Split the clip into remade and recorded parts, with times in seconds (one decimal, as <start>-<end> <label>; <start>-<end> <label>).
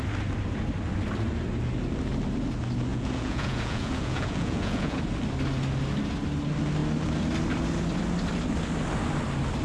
0.0-2.9 recorded; 2.9-5.0 remade; 5.0-9.6 recorded